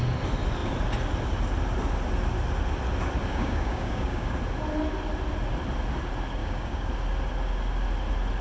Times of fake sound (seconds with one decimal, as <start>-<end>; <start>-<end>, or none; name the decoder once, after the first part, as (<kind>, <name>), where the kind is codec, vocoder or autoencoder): 3.3-4.3 (codec, DAC); 6.4-6.9